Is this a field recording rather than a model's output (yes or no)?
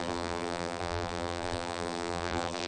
no